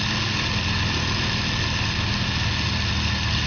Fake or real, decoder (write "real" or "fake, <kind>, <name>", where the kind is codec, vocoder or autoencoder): real